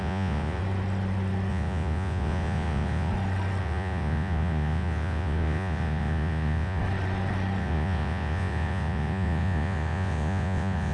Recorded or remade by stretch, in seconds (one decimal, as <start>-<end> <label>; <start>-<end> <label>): 0.0-0.6 remade; 0.6-1.5 recorded; 1.5-3.1 remade; 3.1-3.6 recorded; 3.6-6.8 remade; 6.8-7.6 recorded; 7.6-10.9 remade